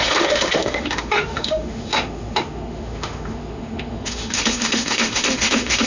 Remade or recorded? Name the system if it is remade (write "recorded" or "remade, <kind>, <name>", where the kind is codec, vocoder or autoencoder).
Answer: remade, autoencoder, DAC-VAE